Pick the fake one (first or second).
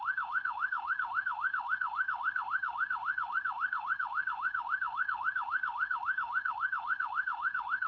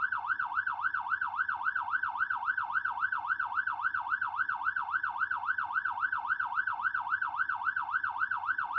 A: first